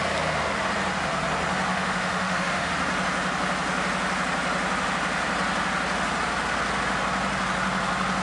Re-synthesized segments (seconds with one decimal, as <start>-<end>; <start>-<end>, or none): 1.7-2.7